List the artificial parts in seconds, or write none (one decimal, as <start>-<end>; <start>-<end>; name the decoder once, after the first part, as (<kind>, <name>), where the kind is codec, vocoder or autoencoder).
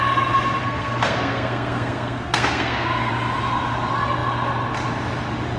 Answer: 0.6-3.1 (codec, SNAC)